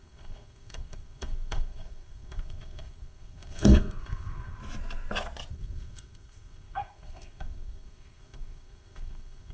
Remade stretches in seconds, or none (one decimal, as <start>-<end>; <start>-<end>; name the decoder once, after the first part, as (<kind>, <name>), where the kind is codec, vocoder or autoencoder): 0.0-4.6 (codec, SNAC); 5.5-9.5